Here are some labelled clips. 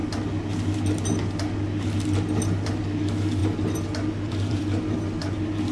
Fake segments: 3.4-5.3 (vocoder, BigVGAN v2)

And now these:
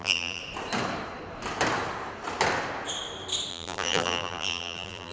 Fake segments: 0.0-0.4 (vocoder, BigVGAN v2); 3.5-5.1

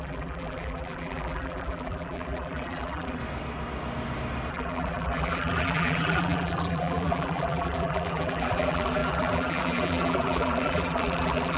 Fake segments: 0.0-3.2 (vocoder, BigVGAN v2); 4.5-11.6